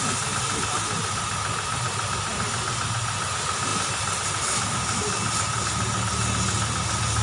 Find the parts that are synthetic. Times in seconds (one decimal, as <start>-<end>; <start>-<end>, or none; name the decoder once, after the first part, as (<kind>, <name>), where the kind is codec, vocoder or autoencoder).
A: none